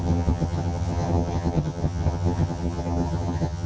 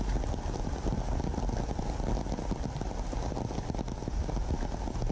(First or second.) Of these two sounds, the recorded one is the second